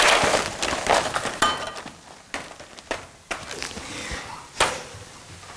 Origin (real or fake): real